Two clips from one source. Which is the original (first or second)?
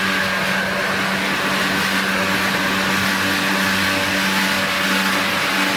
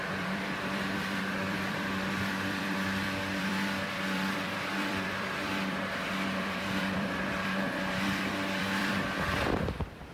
first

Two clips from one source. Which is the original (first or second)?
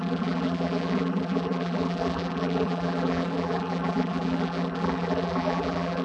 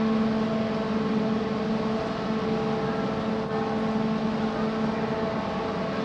second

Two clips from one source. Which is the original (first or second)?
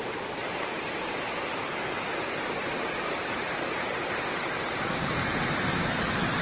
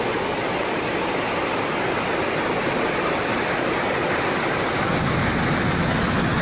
second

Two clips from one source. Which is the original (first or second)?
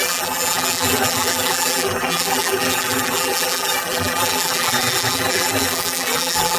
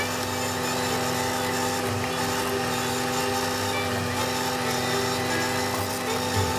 second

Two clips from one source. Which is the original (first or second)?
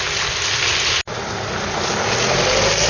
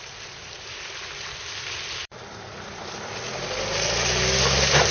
first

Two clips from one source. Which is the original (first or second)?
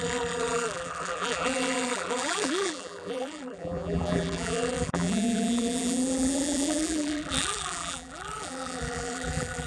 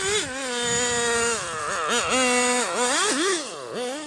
second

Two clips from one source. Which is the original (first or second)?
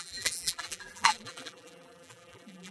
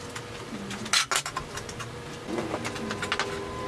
second